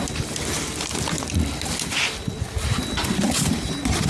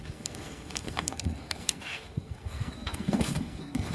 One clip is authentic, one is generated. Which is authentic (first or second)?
first